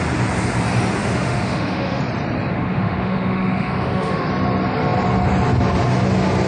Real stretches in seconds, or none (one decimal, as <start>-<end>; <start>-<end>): 0.0-1.0; 2.0-2.5; 4.3-6.5